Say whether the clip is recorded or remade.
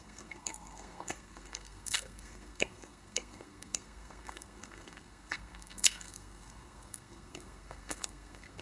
remade